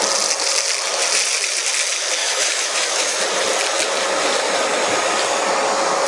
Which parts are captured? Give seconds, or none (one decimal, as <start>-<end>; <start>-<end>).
0.0-2.2; 3.2-6.1